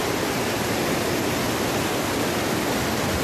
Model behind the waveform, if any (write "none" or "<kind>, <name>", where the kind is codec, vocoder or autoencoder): none